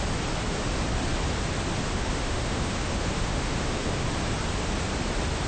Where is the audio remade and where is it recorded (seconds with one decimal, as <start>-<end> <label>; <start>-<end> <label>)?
0.0-1.9 recorded; 1.9-4.1 remade; 4.1-5.5 recorded